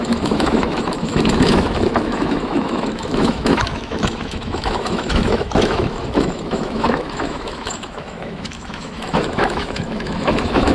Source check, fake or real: fake